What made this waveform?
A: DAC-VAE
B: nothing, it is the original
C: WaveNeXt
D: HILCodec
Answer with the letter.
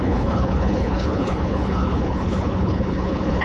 D